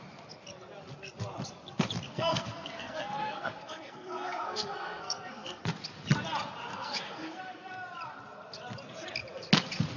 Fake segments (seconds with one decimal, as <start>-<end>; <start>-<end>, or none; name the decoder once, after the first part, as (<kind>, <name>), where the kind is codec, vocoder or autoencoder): 2.1-5.6 (codec, SNAC); 6.7-7.7